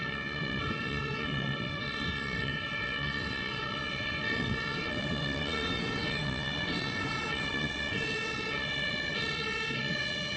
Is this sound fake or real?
fake